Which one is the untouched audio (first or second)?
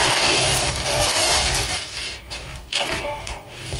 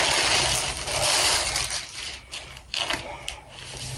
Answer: second